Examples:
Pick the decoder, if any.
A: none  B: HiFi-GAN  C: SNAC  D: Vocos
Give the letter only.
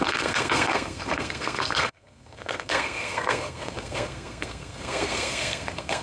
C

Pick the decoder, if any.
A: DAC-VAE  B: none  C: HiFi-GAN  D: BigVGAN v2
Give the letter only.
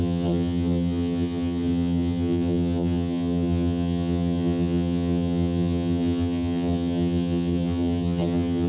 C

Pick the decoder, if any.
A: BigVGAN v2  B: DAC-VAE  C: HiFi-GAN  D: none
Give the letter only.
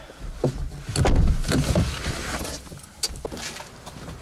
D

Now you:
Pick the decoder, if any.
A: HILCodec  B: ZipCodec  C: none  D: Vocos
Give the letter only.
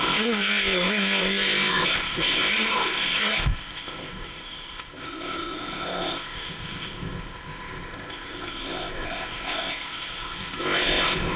B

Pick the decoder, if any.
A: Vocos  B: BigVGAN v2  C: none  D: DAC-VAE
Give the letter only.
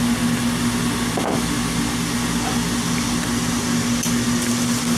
C